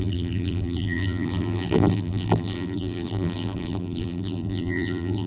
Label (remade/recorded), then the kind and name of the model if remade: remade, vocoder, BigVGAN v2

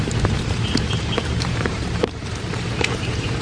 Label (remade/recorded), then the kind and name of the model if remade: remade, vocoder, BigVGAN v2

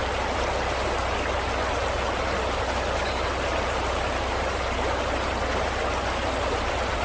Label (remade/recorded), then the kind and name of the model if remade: recorded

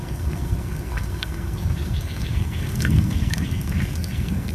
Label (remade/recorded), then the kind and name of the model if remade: remade, codec, SNAC